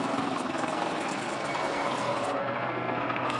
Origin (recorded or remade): remade